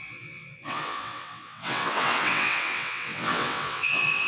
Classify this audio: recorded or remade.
remade